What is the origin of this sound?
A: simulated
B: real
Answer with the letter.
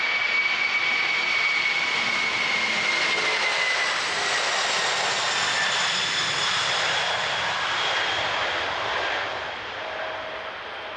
B